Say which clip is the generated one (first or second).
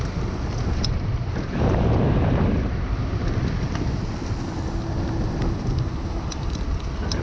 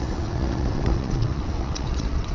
second